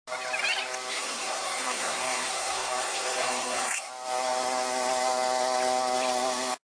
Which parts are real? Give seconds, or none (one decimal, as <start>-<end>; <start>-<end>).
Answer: 0.0-0.9; 3.9-6.7